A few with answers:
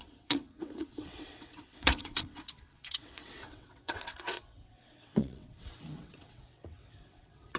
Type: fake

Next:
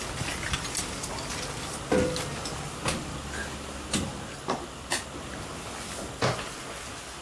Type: real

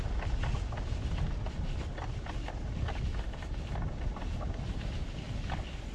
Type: real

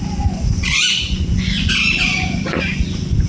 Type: fake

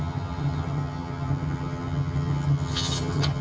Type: fake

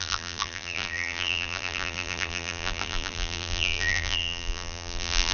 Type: fake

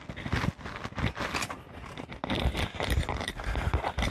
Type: real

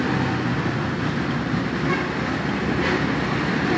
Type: real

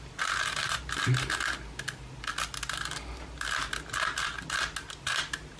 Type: real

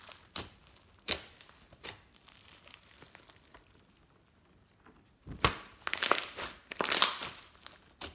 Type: real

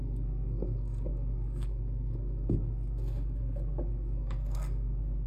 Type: fake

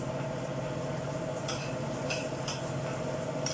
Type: real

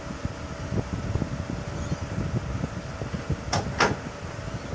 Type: real